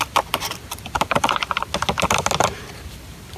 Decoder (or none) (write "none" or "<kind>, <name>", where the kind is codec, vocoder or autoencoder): none